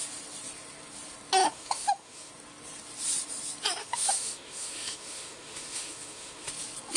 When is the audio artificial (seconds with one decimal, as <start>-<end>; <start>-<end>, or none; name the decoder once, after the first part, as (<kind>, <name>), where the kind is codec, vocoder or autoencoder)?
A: 1.4-2.3 (autoencoder, DAC-VAE); 3.8-6.5